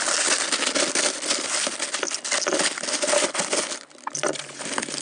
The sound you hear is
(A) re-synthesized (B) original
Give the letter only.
B